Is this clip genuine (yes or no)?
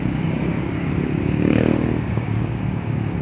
no